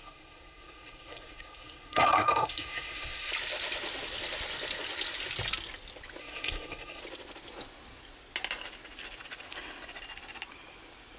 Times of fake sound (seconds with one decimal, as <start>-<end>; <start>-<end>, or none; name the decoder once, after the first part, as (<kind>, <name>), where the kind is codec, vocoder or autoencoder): 0.0-3.3 (codec, SNAC); 6.2-7.0